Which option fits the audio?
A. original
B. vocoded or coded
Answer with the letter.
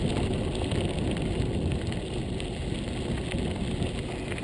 A